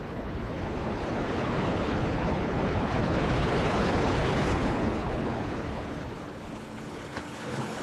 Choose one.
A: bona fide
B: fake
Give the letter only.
B